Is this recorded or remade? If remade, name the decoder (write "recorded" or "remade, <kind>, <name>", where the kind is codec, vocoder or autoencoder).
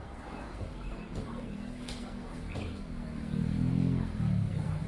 remade, codec, SNAC